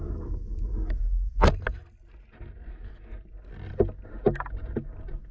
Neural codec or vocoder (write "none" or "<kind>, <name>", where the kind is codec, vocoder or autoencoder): none